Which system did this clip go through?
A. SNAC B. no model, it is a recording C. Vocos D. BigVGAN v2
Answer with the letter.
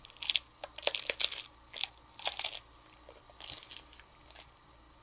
B